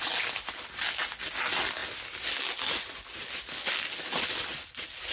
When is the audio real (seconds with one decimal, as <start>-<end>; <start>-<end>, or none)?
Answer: 0.0-5.1